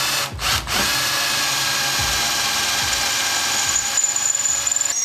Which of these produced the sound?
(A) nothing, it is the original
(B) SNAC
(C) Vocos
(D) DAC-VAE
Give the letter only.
A